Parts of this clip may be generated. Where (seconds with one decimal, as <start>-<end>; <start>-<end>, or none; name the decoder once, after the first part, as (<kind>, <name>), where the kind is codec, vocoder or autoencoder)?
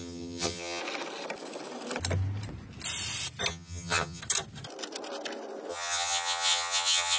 0.0-0.8 (vocoder, HiFi-GAN); 3.5-4.2; 5.7-7.2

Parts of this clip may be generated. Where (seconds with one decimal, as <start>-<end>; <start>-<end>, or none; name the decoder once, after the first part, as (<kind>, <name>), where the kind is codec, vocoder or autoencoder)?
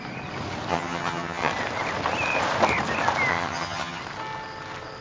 0.7-1.5 (vocoder, HiFi-GAN); 3.3-4.0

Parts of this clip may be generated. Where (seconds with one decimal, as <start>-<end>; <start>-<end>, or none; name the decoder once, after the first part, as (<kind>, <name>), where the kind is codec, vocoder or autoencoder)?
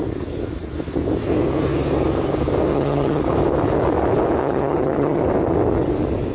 2.7-3.2 (vocoder, HiFi-GAN); 4.4-5.2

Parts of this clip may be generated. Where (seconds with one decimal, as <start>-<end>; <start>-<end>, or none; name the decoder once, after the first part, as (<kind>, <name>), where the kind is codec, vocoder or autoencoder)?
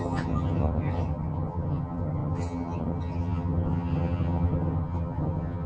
0.0-5.7 (vocoder, HiFi-GAN)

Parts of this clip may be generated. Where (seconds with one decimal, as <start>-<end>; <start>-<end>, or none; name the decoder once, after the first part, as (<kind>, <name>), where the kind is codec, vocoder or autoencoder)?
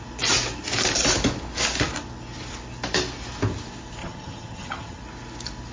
4.0-5.0 (vocoder, HiFi-GAN)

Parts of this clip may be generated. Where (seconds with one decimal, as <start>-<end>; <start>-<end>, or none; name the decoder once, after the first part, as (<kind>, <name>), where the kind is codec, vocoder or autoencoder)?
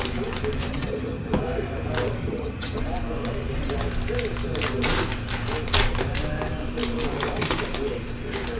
0.7-1.3 (vocoder, HiFi-GAN); 2.2-2.8